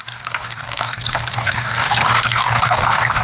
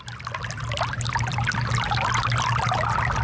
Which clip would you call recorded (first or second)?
second